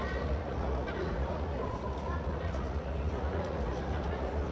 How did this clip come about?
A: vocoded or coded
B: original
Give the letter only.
A